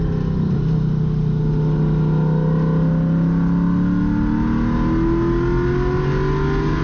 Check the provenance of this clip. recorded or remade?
recorded